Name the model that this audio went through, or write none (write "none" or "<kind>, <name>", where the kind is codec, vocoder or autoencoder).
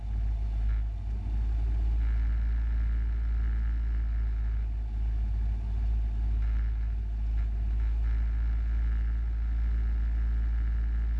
none